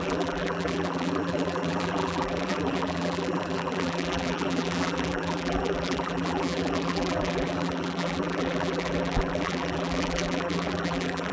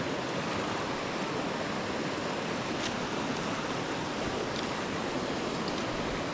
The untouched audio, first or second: second